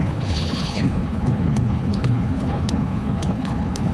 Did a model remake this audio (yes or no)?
yes